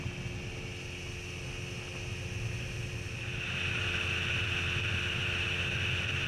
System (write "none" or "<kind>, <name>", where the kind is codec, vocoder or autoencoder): none